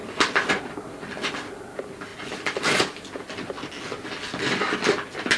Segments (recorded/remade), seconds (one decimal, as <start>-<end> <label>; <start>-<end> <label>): 0.0-5.4 recorded